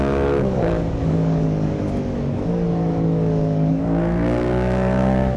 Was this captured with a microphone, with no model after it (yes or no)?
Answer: no